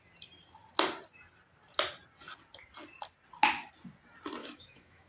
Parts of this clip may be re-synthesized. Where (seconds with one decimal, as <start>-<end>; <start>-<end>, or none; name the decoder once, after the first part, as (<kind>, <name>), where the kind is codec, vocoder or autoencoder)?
4.4-5.1 (autoencoder, DAC-VAE)